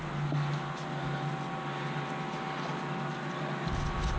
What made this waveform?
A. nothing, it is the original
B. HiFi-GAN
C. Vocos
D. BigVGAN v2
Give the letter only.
A